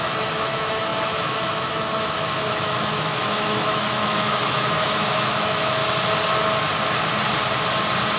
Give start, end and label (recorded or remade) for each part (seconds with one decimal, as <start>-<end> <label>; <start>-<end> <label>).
0.0-5.8 remade; 5.8-8.2 recorded